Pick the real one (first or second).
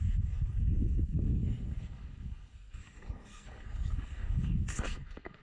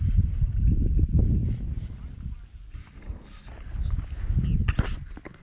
second